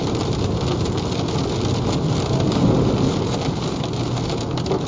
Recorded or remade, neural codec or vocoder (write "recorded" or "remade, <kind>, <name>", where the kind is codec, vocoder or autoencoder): recorded